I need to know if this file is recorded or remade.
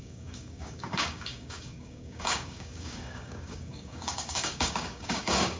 remade